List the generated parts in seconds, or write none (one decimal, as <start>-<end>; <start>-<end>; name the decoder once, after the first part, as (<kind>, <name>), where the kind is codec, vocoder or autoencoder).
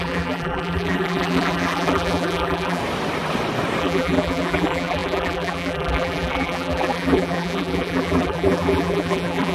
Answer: 0.0-2.8 (vocoder, BigVGAN v2); 3.8-9.5